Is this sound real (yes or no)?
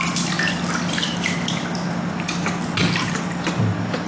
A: yes